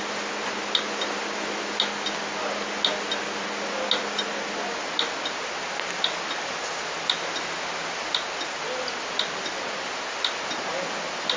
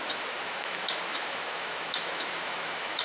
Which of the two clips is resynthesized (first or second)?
second